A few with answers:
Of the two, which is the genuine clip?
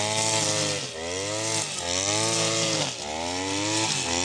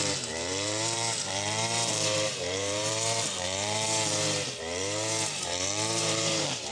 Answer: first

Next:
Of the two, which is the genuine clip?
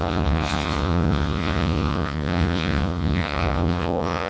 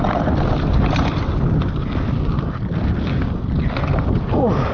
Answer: second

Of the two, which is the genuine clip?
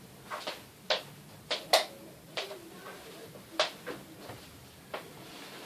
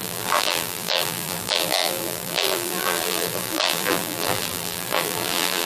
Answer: first